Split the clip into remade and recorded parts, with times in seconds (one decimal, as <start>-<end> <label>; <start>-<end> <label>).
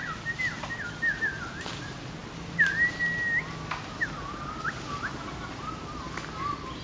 0.0-6.8 recorded